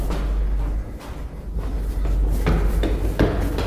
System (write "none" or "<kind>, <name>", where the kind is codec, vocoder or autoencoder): none